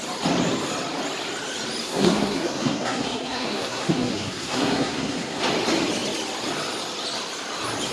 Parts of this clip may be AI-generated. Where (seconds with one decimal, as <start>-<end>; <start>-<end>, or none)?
1.8-5.4